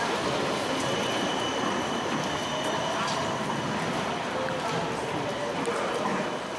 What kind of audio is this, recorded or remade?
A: recorded